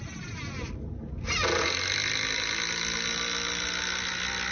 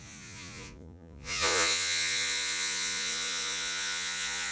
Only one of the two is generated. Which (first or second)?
second